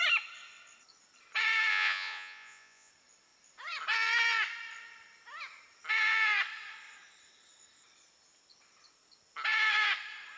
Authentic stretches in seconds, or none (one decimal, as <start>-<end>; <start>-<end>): 0.0-1.7; 2.9-10.4